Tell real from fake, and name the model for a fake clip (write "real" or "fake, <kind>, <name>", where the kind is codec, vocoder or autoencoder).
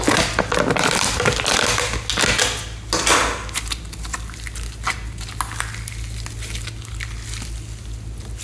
real